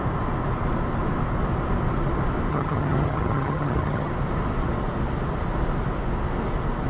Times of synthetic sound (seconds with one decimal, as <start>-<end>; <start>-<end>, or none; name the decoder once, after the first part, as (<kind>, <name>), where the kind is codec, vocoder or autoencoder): 2.5-4.1 (vocoder, HiFi-GAN)